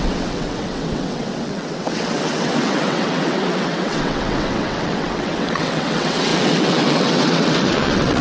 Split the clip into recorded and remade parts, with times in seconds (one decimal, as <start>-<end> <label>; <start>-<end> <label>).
0.0-8.2 remade